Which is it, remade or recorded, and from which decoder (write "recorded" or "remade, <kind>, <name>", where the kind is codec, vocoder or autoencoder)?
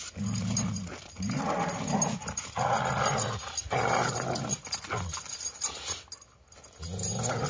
recorded